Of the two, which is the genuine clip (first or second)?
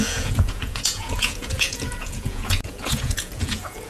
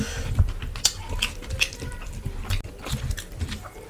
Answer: second